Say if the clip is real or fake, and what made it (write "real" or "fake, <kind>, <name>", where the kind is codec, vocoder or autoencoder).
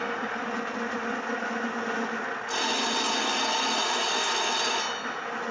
real